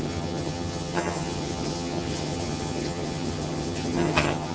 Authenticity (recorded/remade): remade